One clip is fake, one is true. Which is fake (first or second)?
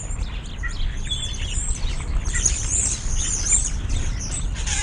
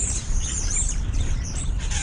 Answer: second